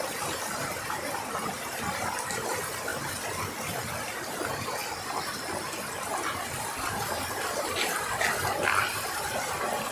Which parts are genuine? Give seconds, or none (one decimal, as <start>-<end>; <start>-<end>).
2.9-4.0; 4.8-8.0